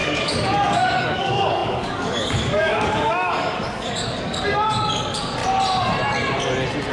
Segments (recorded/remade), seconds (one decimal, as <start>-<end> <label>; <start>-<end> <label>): 0.0-5.4 remade; 5.4-6.9 recorded